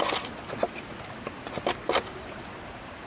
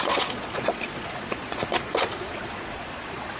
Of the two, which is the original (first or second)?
first